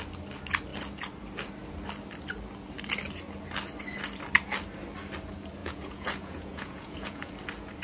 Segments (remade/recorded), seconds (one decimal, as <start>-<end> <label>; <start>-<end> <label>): 0.0-5.6 recorded; 5.6-7.3 remade; 7.3-7.8 recorded